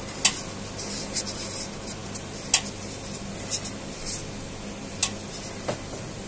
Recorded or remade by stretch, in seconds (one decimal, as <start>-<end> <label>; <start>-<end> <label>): 0.0-6.3 recorded